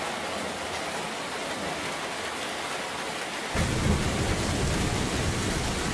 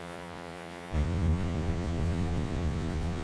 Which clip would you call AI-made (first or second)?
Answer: second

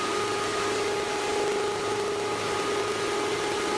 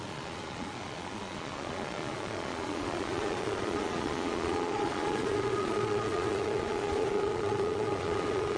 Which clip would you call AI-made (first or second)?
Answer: second